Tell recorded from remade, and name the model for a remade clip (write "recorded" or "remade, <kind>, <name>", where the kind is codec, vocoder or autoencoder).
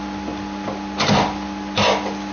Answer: recorded